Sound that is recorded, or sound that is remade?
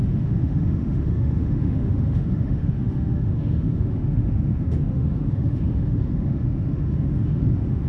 remade